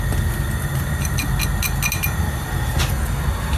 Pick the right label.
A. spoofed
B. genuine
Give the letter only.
B